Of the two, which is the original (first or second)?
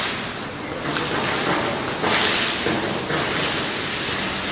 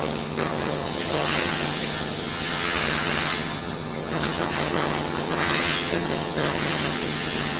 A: first